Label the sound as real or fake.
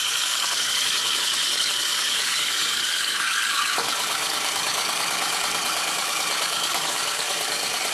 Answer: fake